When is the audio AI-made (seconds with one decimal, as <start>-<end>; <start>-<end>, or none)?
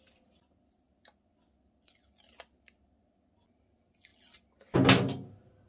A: none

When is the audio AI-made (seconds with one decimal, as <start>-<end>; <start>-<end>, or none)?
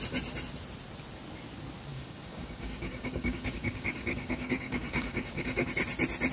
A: 1.9-5.7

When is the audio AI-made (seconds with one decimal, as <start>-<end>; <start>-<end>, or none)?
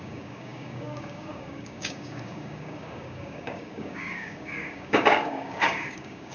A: 0.0-6.3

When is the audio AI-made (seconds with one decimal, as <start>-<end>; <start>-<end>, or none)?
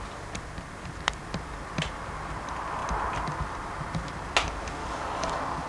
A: 4.8-5.3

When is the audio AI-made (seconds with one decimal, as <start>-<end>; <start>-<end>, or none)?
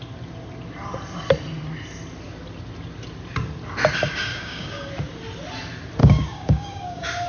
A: 4.3-4.8; 6.0-7.3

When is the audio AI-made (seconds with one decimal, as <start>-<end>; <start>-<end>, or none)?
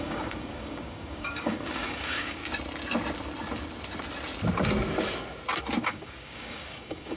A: 0.0-2.4; 5.8-7.2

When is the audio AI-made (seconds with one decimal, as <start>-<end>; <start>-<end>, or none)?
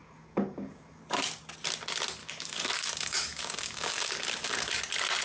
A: 0.0-1.0; 2.2-4.8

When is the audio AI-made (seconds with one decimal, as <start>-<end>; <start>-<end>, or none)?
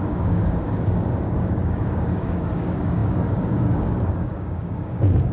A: 0.0-5.3